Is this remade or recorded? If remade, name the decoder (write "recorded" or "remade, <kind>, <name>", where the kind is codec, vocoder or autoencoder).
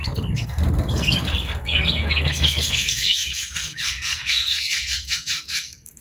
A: remade, codec, SNAC